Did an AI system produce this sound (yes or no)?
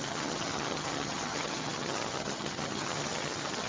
yes